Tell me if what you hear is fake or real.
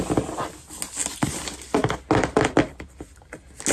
real